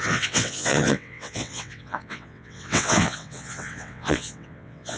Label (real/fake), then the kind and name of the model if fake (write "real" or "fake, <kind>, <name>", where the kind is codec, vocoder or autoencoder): fake, vocoder, WaveNeXt